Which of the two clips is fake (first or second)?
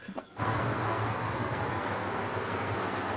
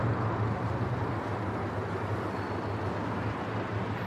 first